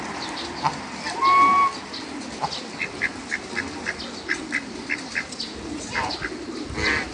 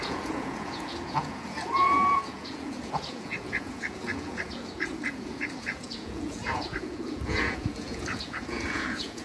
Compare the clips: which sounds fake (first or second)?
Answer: second